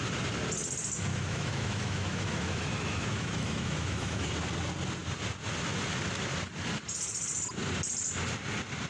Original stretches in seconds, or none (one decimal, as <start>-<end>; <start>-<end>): 0.0-1.1; 4.3-8.9